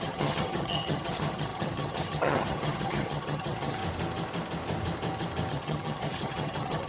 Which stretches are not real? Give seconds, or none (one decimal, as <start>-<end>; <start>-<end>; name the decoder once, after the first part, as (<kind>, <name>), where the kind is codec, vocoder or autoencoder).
0.0-3.8 (vocoder, HiFi-GAN); 5.5-6.9